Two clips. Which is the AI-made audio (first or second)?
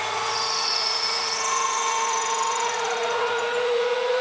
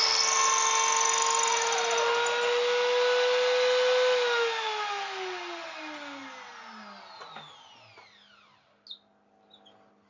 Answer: first